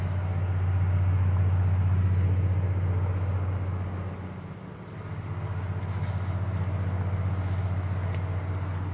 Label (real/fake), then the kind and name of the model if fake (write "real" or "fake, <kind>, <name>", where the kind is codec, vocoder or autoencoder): real